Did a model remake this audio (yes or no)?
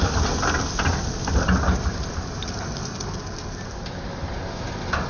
no